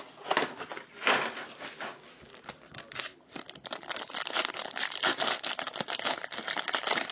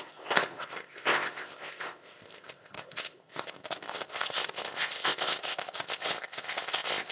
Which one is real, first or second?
first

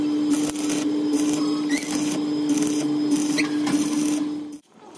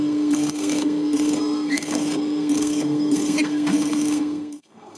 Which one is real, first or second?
first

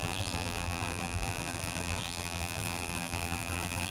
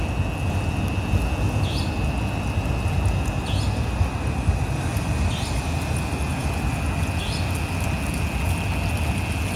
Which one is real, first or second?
second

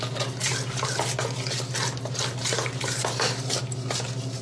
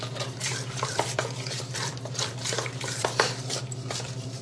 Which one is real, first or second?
first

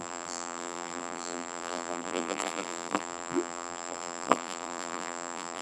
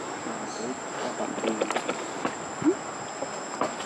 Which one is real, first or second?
second